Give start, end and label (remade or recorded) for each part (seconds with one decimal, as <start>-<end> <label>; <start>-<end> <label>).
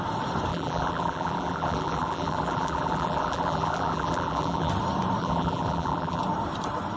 0.0-0.5 recorded; 0.5-4.7 remade; 4.7-5.2 recorded; 5.2-6.2 remade; 6.2-7.0 recorded